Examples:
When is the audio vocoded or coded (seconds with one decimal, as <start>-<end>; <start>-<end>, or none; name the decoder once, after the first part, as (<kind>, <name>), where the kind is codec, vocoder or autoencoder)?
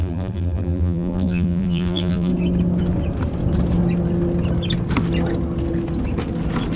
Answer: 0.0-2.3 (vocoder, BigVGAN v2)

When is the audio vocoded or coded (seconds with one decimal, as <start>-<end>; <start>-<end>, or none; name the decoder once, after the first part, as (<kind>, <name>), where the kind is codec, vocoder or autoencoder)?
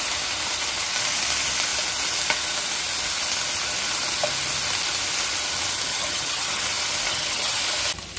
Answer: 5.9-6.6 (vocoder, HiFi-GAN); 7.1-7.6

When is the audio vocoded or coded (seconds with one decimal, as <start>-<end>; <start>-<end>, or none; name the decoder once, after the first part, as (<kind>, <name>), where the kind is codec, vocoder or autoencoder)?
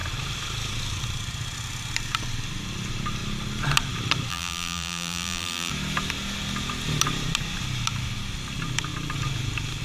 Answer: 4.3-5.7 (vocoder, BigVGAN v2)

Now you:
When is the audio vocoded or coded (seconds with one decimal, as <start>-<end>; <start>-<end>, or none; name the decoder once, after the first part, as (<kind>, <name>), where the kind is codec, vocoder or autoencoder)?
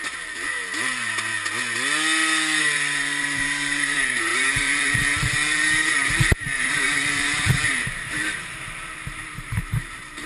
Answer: 0.0-1.3 (vocoder, BigVGAN v2); 2.6-10.3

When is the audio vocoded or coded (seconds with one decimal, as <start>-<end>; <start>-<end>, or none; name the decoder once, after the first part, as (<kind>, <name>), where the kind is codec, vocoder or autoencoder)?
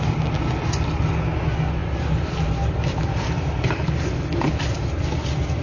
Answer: 1.8-5.0 (vocoder, BigVGAN v2)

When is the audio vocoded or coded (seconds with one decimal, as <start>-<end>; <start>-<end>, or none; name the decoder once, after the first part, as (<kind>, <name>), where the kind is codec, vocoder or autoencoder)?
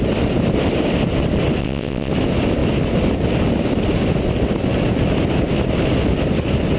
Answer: 1.6-2.1 (vocoder, WaveNeXt)